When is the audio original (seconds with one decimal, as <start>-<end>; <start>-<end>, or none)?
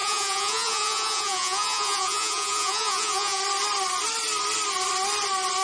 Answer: 3.4-5.6